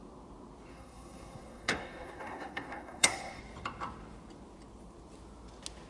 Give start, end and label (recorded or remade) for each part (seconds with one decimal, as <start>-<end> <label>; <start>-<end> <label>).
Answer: 0.0-0.7 recorded; 0.7-3.4 remade; 3.4-5.9 recorded